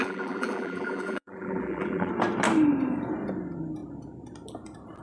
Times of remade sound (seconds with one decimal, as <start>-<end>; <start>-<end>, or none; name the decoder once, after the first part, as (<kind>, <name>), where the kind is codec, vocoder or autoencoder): 0.0-2.1 (vocoder, BigVGAN v2)